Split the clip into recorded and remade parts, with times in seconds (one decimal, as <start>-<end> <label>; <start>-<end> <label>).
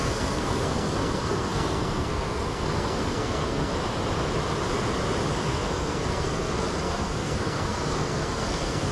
0.0-3.7 remade; 3.7-5.5 recorded; 5.5-8.9 remade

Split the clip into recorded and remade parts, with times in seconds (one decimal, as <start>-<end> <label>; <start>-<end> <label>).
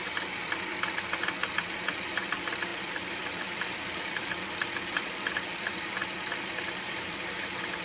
0.0-0.7 remade; 0.7-1.9 recorded; 1.9-7.8 remade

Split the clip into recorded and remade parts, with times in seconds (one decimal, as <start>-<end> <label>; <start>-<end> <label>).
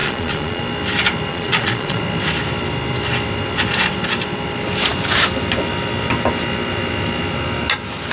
0.0-0.6 remade; 0.6-1.3 recorded; 1.3-2.0 remade; 2.0-8.1 recorded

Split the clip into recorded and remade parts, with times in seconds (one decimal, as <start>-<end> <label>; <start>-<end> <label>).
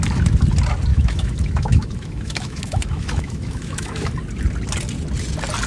0.0-0.9 recorded; 0.9-4.1 remade; 4.1-5.7 recorded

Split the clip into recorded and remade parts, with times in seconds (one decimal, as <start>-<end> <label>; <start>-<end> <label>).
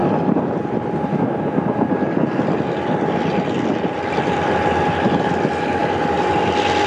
0.0-1.9 remade; 1.9-5.8 recorded; 5.8-6.3 remade; 6.3-6.9 recorded